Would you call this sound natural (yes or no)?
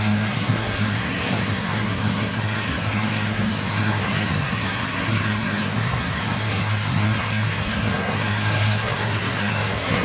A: no